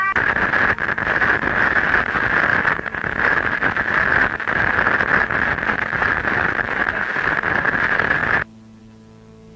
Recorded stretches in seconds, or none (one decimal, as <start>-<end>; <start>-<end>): 0.0-9.6